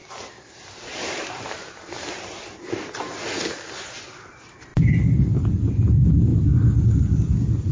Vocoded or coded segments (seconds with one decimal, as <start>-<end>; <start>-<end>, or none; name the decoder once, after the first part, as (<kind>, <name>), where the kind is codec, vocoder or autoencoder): none